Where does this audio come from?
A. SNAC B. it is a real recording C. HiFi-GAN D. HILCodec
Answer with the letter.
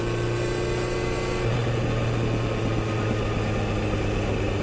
B